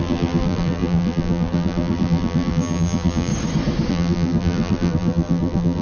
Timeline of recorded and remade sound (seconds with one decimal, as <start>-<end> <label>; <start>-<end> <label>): 0.0-3.3 remade; 3.3-3.9 recorded; 3.9-5.8 remade